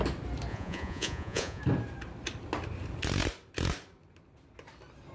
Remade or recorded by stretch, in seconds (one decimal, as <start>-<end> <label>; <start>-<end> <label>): 0.0-0.5 recorded; 0.5-1.6 remade; 1.6-5.1 recorded